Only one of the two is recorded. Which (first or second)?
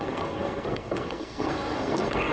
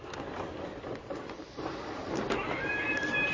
second